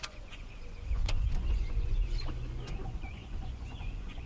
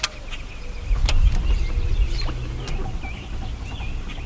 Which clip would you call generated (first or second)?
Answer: first